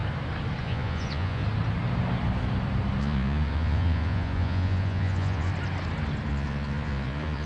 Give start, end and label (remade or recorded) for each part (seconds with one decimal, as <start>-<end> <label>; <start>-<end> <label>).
0.0-0.6 recorded; 0.6-1.4 remade; 1.4-3.0 recorded; 3.0-5.5 remade; 5.5-6.3 recorded; 6.3-7.5 remade